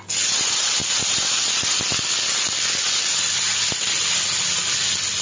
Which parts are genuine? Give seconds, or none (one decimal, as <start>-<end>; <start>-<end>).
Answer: 0.0-5.2